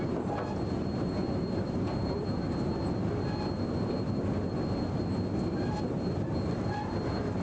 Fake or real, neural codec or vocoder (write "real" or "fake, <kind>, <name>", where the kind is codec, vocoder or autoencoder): real